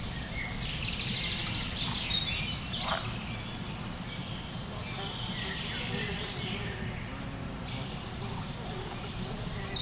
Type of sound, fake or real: real